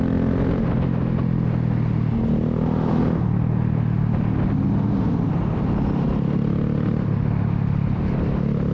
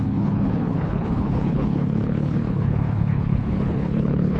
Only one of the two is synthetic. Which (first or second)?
second